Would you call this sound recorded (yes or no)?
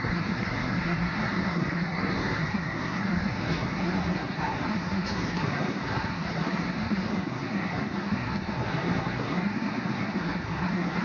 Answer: no